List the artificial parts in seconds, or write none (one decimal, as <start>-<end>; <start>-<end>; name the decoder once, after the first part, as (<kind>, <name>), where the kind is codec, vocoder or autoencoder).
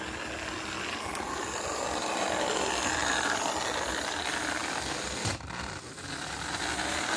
none